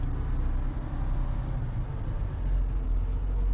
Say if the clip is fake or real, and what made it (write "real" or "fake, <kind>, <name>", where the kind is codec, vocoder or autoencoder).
real